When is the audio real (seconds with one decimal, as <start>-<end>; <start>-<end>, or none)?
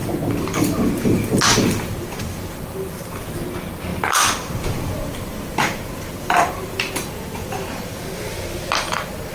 3.1-3.9; 8.0-9.3